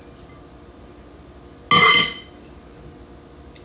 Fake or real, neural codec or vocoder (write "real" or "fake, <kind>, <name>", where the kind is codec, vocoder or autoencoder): real